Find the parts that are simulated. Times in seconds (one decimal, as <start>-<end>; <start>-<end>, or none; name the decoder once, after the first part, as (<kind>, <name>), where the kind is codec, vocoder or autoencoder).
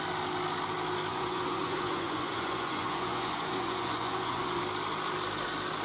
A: 1.1-4.6 (vocoder, Vocos)